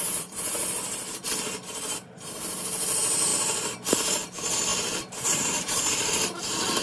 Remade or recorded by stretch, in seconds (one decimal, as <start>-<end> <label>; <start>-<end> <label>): 0.0-0.6 remade; 0.6-1.9 recorded; 1.9-3.3 remade; 3.3-3.9 recorded; 3.9-6.8 remade